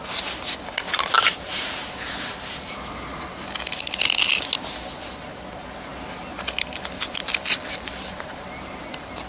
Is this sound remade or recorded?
recorded